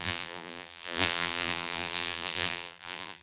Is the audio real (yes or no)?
no